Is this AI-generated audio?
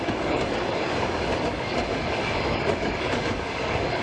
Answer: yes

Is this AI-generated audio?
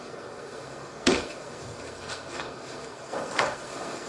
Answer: yes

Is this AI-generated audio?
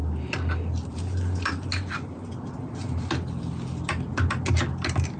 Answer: no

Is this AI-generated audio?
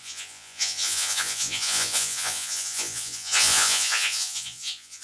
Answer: yes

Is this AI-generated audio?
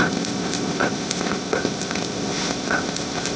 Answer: yes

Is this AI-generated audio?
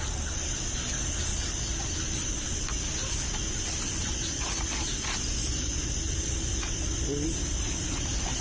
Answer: no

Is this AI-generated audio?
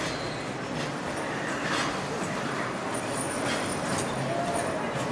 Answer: no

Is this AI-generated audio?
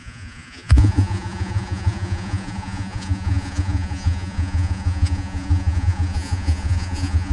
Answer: yes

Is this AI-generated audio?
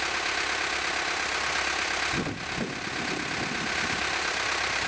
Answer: no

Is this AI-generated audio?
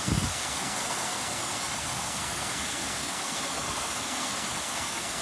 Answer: yes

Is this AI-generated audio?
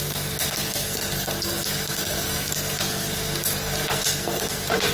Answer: yes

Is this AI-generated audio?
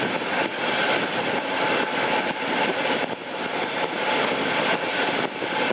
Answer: no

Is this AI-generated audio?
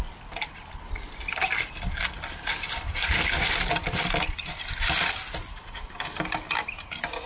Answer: no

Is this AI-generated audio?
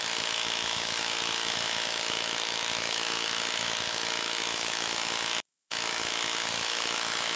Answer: yes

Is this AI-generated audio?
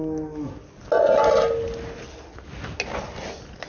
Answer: no